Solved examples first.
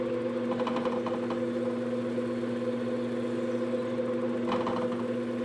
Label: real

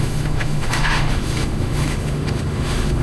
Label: fake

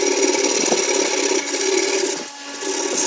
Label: real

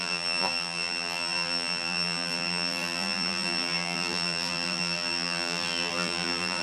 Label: fake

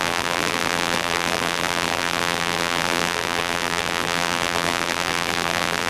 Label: fake